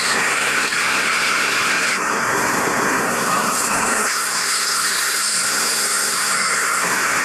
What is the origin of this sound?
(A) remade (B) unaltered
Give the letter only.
A